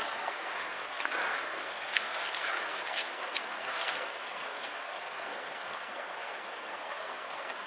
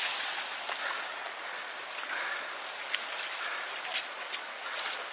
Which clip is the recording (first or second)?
second